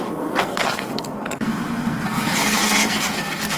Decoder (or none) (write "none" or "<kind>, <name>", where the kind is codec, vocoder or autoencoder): codec, SNAC